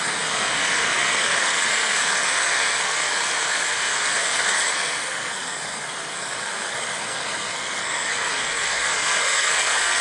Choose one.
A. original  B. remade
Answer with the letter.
B